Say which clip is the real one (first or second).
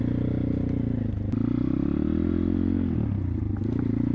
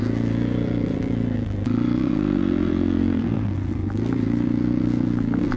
first